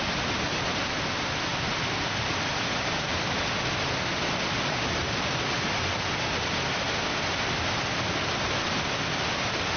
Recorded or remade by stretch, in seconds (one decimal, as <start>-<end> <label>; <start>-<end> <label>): 0.0-9.8 recorded